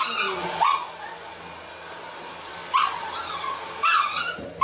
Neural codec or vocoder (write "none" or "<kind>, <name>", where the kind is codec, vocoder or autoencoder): none